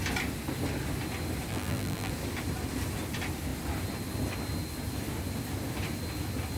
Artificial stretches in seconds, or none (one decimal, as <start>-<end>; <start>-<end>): 1.5-2.1